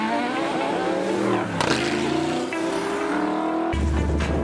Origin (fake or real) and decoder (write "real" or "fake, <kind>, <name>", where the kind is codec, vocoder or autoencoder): real